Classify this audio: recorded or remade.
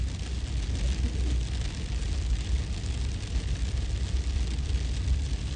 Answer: recorded